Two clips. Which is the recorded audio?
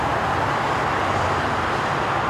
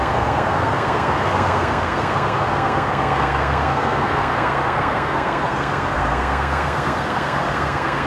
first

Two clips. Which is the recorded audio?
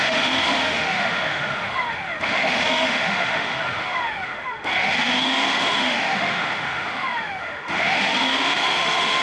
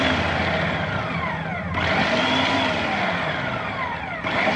second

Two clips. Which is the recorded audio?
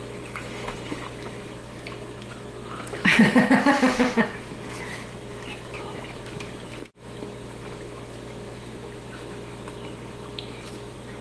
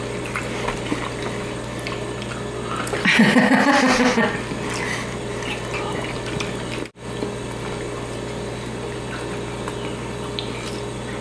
second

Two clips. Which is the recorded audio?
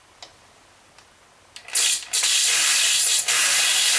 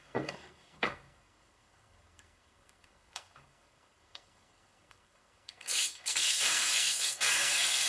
first